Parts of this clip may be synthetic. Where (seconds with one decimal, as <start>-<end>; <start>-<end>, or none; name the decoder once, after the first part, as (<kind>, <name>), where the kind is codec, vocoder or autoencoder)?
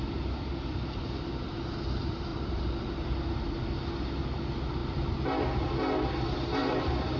2.3-2.8 (vocoder, BigVGAN v2); 6.6-7.2